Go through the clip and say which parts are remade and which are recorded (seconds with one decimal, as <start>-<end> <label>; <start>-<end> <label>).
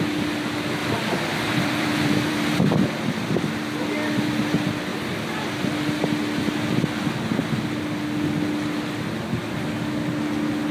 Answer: 0.0-0.8 recorded; 0.8-2.6 remade; 2.6-10.7 recorded